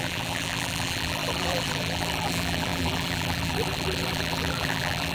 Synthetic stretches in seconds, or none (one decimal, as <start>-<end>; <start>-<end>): 0.0-5.1